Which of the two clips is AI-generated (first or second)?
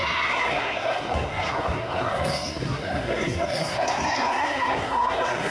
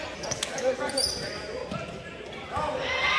first